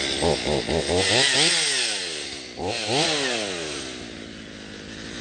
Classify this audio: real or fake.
real